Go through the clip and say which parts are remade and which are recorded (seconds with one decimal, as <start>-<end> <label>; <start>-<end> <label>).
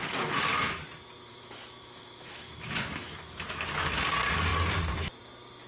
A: 0.0-1.3 recorded; 1.3-3.9 remade; 3.9-5.7 recorded